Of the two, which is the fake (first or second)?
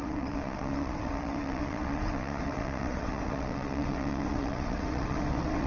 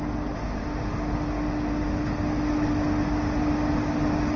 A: first